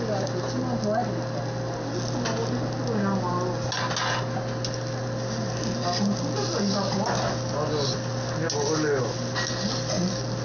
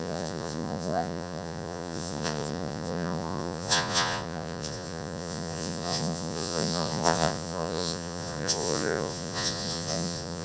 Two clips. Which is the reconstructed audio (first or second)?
second